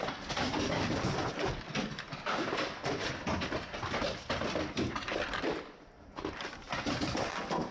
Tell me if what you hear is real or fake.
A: real